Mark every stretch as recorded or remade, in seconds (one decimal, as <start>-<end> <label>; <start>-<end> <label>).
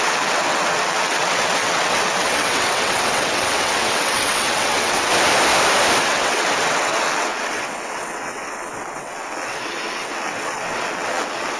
0.0-5.1 remade; 5.1-6.0 recorded; 6.0-11.6 remade